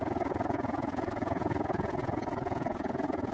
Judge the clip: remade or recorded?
remade